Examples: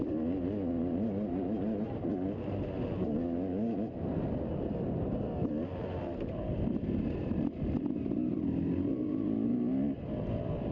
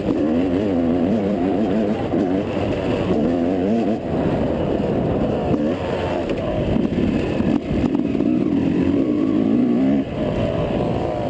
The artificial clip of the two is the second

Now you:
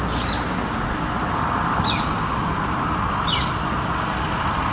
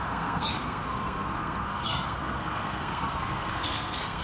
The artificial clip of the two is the second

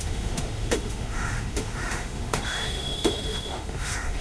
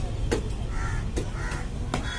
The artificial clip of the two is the first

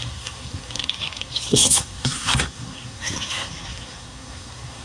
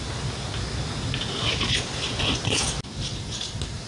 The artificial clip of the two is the first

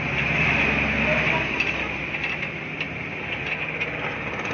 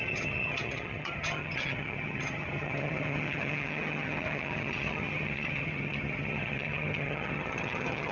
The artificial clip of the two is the second